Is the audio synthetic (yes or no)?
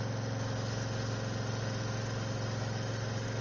no